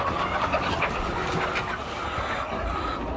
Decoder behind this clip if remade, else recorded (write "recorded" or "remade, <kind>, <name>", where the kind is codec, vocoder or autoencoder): recorded